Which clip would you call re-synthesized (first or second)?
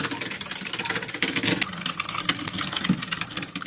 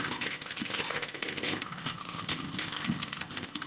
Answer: second